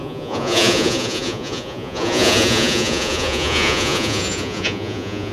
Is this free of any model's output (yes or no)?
no